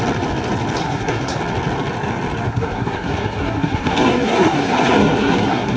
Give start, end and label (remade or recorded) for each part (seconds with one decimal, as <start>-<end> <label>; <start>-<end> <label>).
0.0-0.8 recorded; 0.8-1.4 remade; 1.4-2.5 recorded; 2.5-5.8 remade